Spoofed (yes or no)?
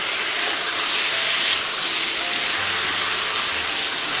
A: no